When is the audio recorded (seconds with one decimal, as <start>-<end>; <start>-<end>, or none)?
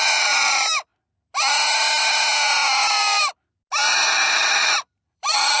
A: 0.9-4.3